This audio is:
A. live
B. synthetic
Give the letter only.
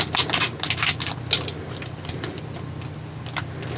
A